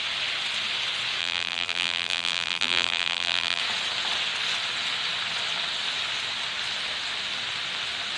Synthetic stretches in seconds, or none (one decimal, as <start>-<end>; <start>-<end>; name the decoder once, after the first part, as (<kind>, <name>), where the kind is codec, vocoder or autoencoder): 1.2-3.6 (vocoder, BigVGAN v2)